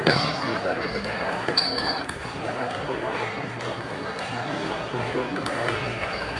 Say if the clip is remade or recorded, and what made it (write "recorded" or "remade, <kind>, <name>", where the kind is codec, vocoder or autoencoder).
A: remade, codec, SNAC